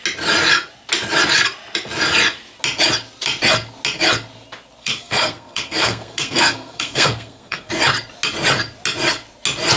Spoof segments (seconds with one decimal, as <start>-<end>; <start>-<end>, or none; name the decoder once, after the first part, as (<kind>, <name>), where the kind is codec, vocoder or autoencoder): 4.8-7.7 (codec, SNAC)